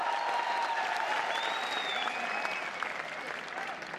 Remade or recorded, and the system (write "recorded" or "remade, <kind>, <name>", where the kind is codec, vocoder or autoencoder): recorded